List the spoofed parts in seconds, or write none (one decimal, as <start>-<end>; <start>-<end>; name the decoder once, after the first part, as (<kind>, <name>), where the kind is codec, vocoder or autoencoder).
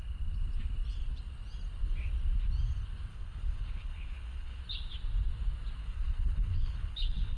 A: 3.1-4.6 (codec, HILCodec); 5.8-7.4